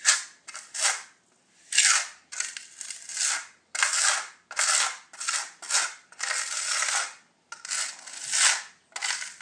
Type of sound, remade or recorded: recorded